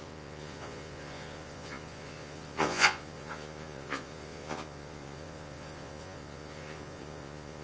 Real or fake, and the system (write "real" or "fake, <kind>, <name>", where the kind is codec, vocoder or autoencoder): fake, vocoder, Vocos